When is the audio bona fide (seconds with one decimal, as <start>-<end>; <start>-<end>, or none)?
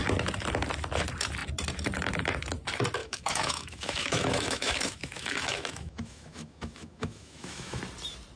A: 0.0-3.0; 7.8-8.4